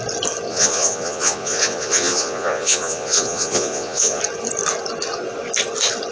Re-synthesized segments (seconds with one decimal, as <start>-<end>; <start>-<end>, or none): 0.5-4.2